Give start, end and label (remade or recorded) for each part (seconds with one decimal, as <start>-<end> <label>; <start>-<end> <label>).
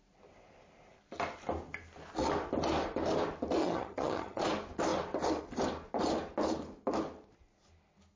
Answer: 0.0-3.6 recorded; 3.6-4.4 remade; 4.4-8.2 recorded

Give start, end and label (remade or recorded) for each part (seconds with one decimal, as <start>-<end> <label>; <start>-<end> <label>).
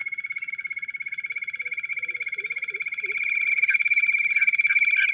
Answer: 0.0-0.5 recorded; 0.5-1.9 remade; 1.9-3.5 recorded; 3.5-4.0 remade; 4.0-5.1 recorded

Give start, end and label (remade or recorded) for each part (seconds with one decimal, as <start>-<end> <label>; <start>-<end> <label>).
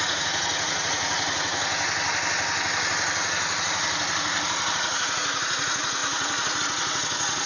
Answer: 0.0-1.7 remade; 1.7-4.7 recorded; 4.7-7.5 remade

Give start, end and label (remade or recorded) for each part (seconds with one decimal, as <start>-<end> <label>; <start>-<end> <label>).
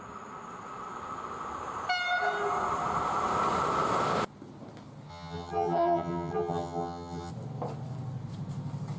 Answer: 0.0-5.1 recorded; 5.1-7.3 remade; 7.3-9.0 recorded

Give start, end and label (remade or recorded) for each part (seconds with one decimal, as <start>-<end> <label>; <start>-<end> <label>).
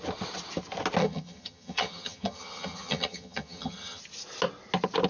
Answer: 0.0-1.0 recorded; 1.0-4.0 remade; 4.0-5.1 recorded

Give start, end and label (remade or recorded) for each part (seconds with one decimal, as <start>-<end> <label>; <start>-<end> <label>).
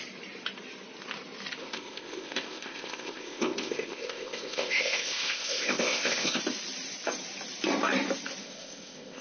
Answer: 0.0-1.6 recorded; 1.6-6.4 remade; 6.4-8.4 recorded; 8.4-9.2 remade